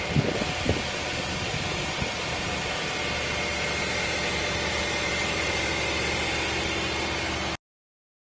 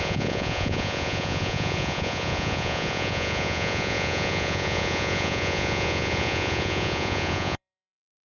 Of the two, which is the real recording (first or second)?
first